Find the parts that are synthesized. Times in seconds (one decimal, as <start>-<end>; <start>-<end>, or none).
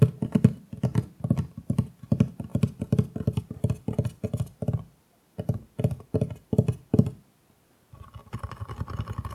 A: 2.5-3.4